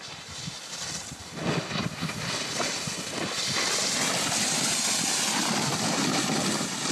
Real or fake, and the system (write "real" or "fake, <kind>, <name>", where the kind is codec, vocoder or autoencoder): real